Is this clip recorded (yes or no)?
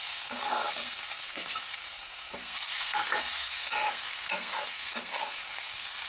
no